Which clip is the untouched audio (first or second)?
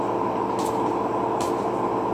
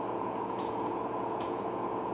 first